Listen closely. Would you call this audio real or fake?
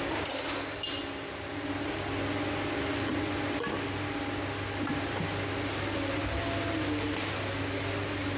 real